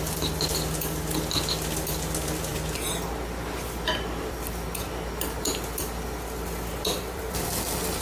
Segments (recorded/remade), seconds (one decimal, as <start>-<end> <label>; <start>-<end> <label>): 0.0-6.9 recorded; 6.9-7.5 remade; 7.5-8.0 recorded